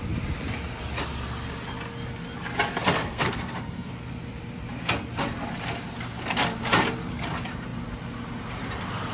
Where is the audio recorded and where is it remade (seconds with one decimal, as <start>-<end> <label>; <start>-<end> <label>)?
0.0-3.0 recorded; 3.0-3.9 remade; 3.9-9.1 recorded

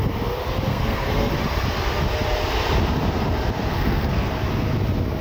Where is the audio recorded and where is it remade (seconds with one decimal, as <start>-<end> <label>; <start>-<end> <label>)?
0.0-0.7 recorded; 0.7-1.3 remade; 1.3-3.7 recorded; 3.7-4.3 remade; 4.3-5.2 recorded

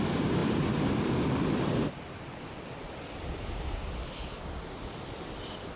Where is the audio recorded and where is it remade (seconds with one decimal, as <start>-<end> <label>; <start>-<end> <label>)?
0.0-5.8 recorded

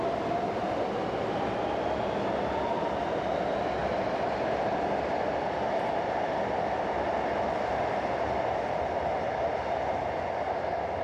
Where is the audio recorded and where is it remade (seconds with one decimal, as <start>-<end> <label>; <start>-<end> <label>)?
0.0-11.0 recorded